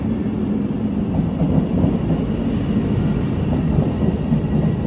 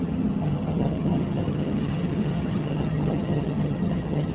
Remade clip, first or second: second